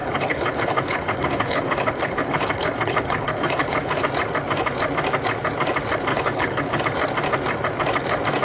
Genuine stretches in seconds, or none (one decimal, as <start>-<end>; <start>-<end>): 4.0-6.1; 6.8-8.4